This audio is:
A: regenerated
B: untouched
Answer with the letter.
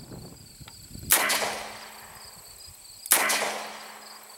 B